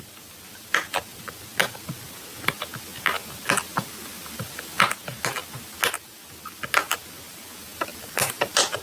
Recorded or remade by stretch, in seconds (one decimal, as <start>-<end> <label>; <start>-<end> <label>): 0.0-7.7 recorded; 7.7-8.8 remade